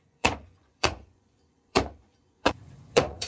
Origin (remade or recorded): remade